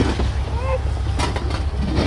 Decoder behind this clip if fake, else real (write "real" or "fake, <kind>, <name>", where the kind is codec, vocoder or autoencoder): real